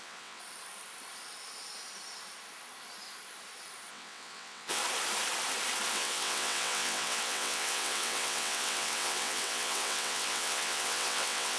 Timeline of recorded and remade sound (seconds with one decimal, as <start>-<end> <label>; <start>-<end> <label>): 0.0-0.4 remade; 0.4-3.9 recorded; 3.9-4.8 remade; 4.8-5.9 recorded; 5.9-11.6 remade